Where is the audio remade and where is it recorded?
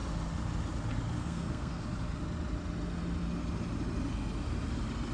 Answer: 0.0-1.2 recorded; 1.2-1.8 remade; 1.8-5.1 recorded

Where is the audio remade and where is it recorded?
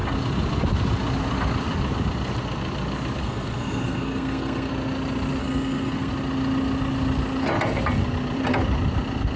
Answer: 0.0-3.2 recorded; 3.2-4.7 remade; 4.7-5.4 recorded; 5.4-6.1 remade; 6.1-9.4 recorded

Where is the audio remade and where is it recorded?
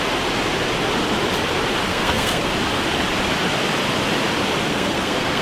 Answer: 0.0-1.9 recorded; 1.9-2.5 remade; 2.5-4.7 recorded; 4.7-5.4 remade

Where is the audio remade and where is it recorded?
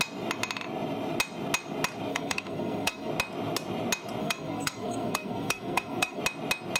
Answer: 0.0-2.1 recorded; 2.1-3.1 remade; 3.1-4.2 recorded; 4.2-6.2 remade; 6.2-6.8 recorded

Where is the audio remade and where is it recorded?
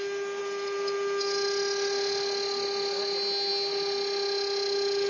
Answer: 0.0-5.1 recorded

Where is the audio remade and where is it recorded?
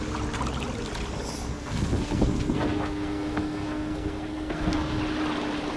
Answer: 0.0-1.5 recorded; 1.5-5.0 remade; 5.0-5.8 recorded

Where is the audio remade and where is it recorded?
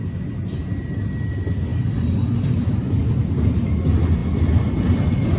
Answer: 0.0-5.4 recorded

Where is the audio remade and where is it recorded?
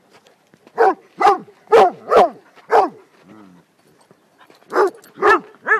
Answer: 0.0-5.8 recorded